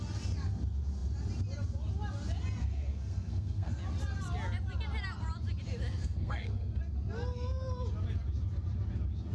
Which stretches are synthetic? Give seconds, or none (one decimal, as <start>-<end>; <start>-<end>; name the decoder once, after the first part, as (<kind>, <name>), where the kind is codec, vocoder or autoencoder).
2.6-3.8 (codec, SNAC); 6.0-6.8